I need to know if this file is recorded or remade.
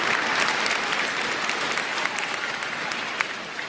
recorded